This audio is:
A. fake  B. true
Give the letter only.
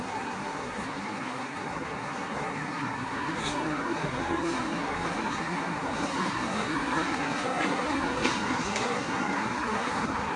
A